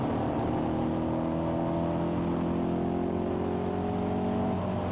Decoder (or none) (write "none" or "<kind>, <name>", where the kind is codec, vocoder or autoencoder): none